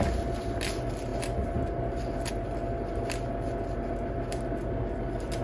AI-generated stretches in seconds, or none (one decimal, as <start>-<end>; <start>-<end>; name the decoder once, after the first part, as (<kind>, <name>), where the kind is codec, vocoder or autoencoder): none